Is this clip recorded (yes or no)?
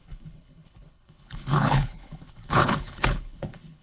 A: no